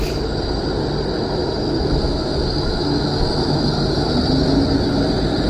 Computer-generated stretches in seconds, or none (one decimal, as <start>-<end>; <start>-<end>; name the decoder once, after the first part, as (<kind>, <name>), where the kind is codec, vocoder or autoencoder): 1.4-3.7 (autoencoder, DAC-VAE)